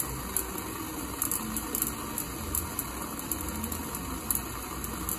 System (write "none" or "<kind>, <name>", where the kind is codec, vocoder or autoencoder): none